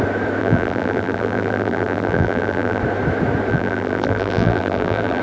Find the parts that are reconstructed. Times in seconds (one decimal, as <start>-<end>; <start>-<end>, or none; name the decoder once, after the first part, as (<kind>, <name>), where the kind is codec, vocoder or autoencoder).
0.4-2.8 (vocoder, BigVGAN v2); 3.5-5.2